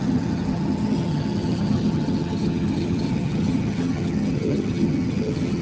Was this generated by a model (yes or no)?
yes